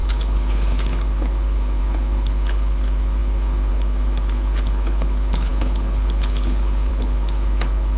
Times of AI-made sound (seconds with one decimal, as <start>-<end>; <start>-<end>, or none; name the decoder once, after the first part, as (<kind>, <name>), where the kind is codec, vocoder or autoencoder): 0.0-8.0 (codec, HILCodec)